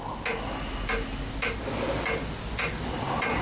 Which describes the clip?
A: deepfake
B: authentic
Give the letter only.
B